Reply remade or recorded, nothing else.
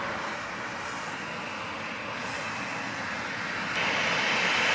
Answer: recorded